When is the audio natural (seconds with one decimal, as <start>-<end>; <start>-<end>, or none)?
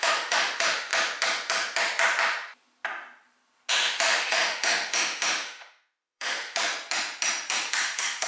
0.9-3.7; 6.7-7.7